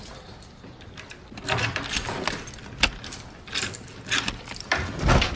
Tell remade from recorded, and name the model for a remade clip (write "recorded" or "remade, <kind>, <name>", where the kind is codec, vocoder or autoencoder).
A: recorded